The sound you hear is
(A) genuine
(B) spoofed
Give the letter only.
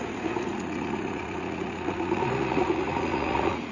B